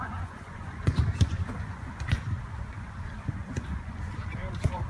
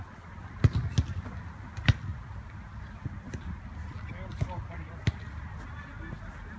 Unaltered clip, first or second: second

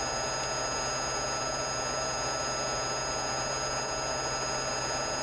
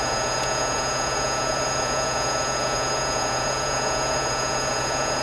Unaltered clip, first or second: first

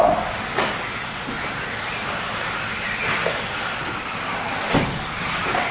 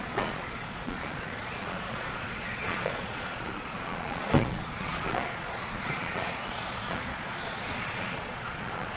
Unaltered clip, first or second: first